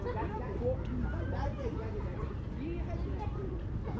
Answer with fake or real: real